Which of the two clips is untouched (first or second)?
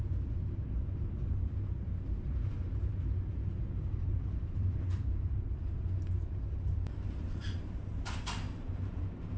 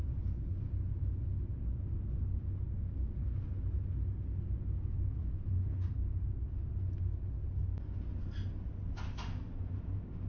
second